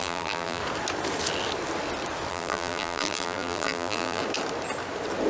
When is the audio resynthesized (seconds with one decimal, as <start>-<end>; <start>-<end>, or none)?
0.0-0.6; 2.3-4.2